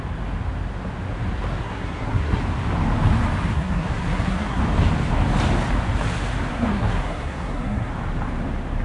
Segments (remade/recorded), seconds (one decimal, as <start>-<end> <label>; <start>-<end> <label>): 0.0-1.6 recorded; 1.6-2.4 remade; 2.4-3.5 recorded; 3.5-4.6 remade; 4.6-6.5 recorded; 6.5-7.9 remade; 7.9-8.8 recorded